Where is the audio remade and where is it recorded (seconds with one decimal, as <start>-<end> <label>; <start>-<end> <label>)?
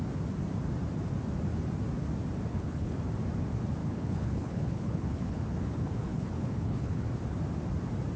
0.0-2.5 recorded; 2.5-3.0 remade; 3.0-3.8 recorded; 3.8-7.0 remade; 7.0-8.2 recorded